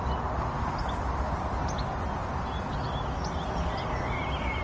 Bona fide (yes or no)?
yes